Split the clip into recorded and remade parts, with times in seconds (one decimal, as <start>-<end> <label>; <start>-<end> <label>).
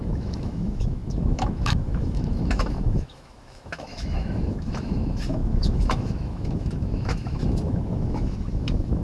0.0-9.0 remade